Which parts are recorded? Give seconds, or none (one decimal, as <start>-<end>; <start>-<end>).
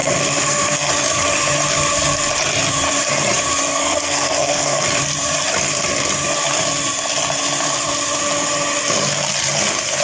0.9-3.7; 4.8-10.0